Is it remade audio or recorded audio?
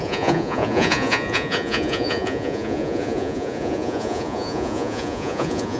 remade